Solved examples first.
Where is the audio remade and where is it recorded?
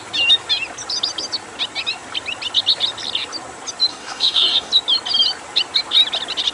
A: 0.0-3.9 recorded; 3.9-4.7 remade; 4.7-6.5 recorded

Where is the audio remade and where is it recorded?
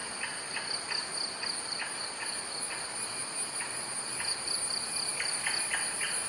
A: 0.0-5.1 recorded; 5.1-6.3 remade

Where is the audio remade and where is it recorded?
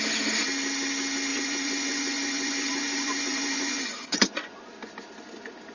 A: 0.0-1.3 recorded; 1.3-4.5 remade; 4.5-5.7 recorded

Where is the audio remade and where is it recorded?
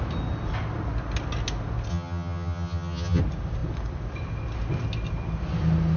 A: 0.0-1.9 recorded; 1.9-3.2 remade; 3.2-6.0 recorded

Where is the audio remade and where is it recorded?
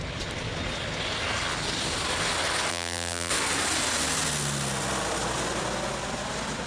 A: 0.0-2.7 recorded; 2.7-3.3 remade; 3.3-6.7 recorded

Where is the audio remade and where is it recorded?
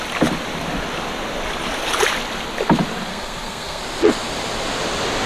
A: 0.0-3.1 recorded; 3.1-3.8 remade; 3.8-5.3 recorded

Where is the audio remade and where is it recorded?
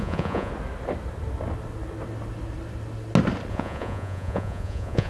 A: 0.0-0.5 remade; 0.5-3.5 recorded; 3.5-5.1 remade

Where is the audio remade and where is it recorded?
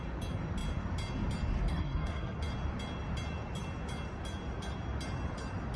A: 0.0-1.7 recorded; 1.7-2.4 remade; 2.4-5.8 recorded